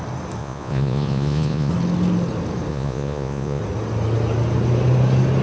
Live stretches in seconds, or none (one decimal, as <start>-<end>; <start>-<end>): 0.0-0.4; 1.7-2.7; 3.6-5.4

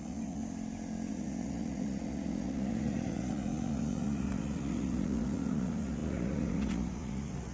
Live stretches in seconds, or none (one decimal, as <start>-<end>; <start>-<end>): 0.4-1.1

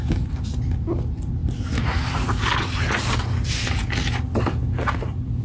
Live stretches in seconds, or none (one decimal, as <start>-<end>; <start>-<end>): 0.0-5.4

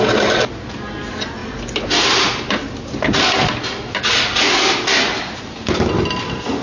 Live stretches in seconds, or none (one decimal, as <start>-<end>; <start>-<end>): 0.0-6.6

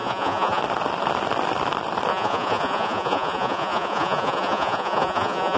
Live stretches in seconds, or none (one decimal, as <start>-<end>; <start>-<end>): 0.6-2.1